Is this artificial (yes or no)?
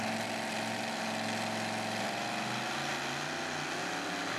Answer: no